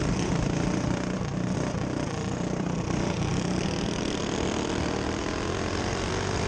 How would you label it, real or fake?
fake